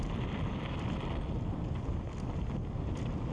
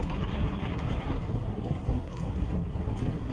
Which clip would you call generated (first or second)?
second